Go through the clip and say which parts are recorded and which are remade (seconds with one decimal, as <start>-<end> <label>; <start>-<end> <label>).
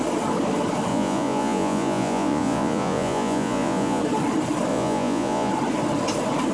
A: 0.0-0.9 recorded; 0.9-4.0 remade; 4.0-4.7 recorded; 4.7-5.5 remade; 5.5-6.5 recorded